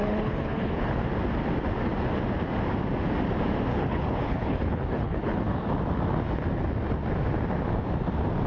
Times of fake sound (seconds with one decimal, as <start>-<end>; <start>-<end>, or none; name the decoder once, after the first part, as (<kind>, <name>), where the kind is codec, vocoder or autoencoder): 0.0-1.0 (codec, HILCodec); 3.7-5.7